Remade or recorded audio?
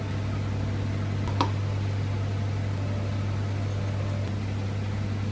recorded